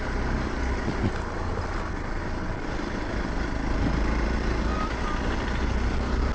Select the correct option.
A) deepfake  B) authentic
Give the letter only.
B